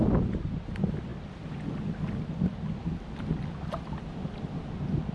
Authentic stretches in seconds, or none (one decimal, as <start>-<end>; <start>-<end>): 0.0-5.1